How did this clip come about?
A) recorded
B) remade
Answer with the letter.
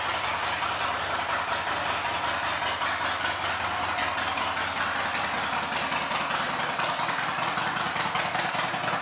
A